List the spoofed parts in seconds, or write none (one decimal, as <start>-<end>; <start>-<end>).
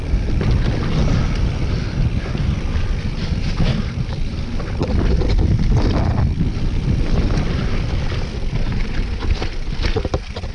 0.0-1.0; 4.3-10.5